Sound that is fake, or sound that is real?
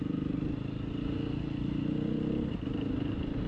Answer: real